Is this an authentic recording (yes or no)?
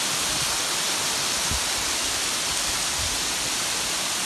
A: yes